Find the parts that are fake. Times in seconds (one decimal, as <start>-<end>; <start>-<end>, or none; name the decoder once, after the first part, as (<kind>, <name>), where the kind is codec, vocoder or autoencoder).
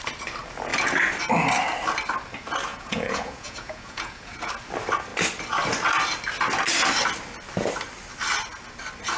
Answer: 2.7-4.5 (vocoder, Vocos)